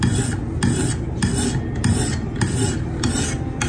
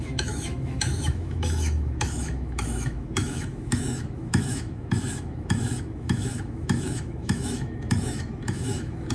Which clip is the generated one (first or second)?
second